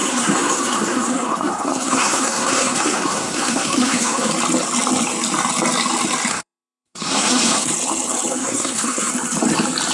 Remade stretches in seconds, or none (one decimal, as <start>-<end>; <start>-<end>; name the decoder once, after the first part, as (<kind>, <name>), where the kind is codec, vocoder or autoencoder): 0.0-4.3 (codec, SNAC); 6.3-7.7; 8.4-9.1